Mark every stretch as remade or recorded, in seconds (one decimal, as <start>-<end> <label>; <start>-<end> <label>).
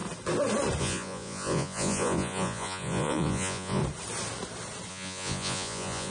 0.0-0.8 recorded; 0.8-3.8 remade; 3.8-4.9 recorded; 4.9-6.1 remade